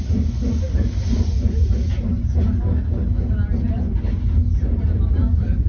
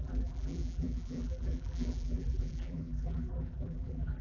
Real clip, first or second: first